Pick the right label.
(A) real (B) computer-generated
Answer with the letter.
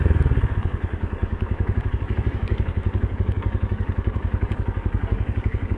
B